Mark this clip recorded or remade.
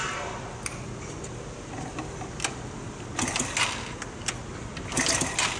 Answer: recorded